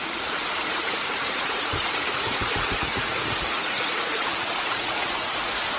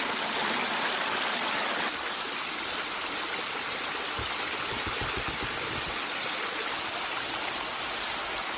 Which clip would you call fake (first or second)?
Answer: first